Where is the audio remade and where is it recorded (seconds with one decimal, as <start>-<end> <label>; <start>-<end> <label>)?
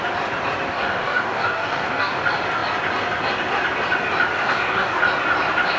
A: 0.0-0.7 recorded; 0.7-2.2 remade; 2.2-4.4 recorded; 4.4-5.0 remade; 5.0-5.8 recorded